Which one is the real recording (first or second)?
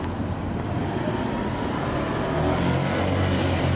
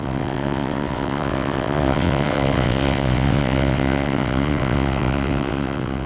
first